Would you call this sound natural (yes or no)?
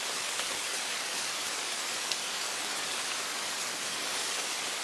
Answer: no